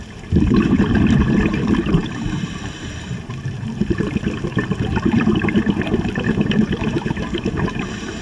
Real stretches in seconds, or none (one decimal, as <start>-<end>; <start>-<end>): none